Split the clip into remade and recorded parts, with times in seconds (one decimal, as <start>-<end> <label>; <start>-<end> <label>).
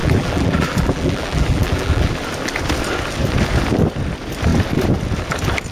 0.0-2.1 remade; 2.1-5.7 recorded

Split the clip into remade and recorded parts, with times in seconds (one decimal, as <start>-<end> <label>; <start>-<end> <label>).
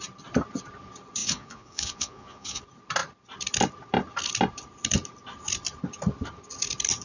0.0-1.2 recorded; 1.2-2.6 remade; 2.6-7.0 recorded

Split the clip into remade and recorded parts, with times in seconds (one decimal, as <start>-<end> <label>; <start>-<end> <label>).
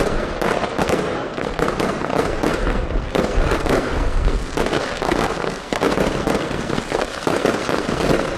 0.0-8.4 remade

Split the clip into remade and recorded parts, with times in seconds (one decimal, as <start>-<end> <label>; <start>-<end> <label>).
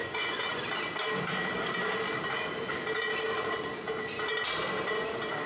0.0-0.6 remade; 0.6-5.5 recorded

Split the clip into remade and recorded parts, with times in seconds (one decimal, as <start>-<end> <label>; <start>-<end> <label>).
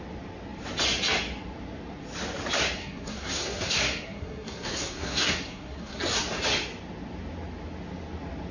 0.0-2.8 recorded; 2.8-6.0 remade; 6.0-8.5 recorded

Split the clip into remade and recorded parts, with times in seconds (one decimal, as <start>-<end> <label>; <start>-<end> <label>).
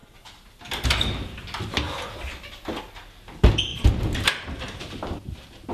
0.0-3.7 recorded; 3.7-5.7 remade